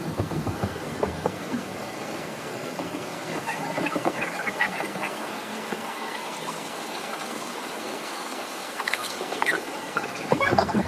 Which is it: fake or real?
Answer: fake